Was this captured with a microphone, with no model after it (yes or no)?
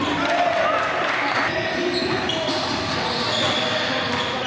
yes